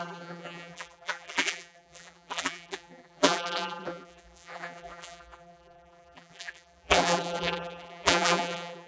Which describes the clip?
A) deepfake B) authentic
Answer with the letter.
A